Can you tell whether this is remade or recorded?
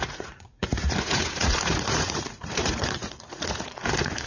remade